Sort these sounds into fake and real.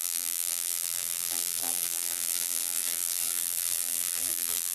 fake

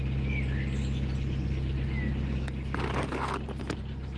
real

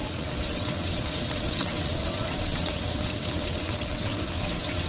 fake